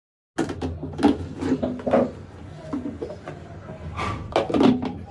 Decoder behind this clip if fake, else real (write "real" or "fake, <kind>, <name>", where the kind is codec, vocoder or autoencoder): real